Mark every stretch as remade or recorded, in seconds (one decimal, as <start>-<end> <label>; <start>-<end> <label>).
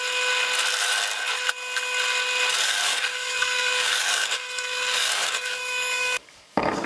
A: 0.0-2.5 recorded; 2.5-6.9 remade